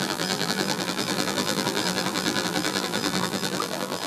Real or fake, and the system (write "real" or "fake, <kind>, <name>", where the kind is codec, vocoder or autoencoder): fake, vocoder, BigVGAN v2